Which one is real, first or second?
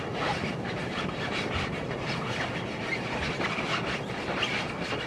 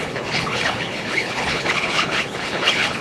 first